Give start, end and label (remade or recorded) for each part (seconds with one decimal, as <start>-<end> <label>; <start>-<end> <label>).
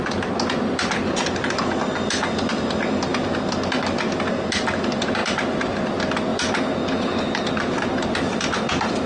0.0-9.1 recorded